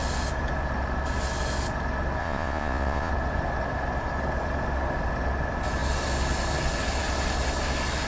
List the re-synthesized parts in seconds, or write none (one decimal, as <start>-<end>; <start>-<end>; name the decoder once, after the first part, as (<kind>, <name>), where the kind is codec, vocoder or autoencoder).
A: 2.2-3.1 (vocoder, Vocos)